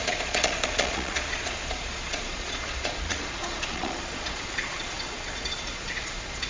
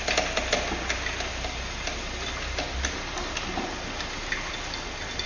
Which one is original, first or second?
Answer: second